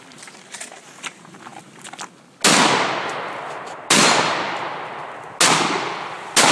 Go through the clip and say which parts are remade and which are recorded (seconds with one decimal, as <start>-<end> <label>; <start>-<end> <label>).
0.0-6.5 recorded

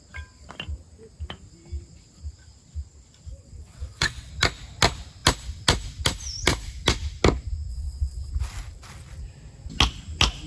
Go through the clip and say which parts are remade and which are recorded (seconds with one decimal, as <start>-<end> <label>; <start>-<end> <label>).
0.0-3.3 recorded; 3.3-4.3 remade; 4.3-7.7 recorded; 7.7-8.3 remade; 8.3-10.5 recorded

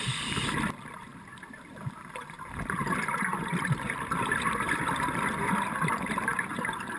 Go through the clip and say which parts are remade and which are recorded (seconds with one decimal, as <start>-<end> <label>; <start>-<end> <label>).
0.0-7.0 remade

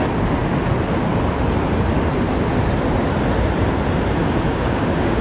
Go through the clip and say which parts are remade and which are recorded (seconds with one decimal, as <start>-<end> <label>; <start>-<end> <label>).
0.0-4.2 recorded; 4.2-5.2 remade

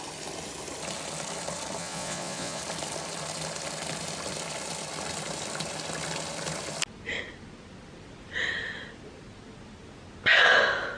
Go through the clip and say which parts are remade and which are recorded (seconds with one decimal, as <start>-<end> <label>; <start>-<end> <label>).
0.0-1.8 recorded; 1.8-2.6 remade; 2.6-11.0 recorded

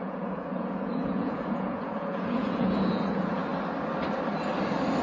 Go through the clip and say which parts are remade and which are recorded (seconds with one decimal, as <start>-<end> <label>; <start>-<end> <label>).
0.0-3.5 remade; 3.5-5.0 recorded

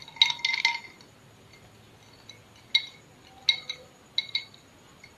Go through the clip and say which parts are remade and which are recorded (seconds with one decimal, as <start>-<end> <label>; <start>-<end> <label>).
0.0-5.2 recorded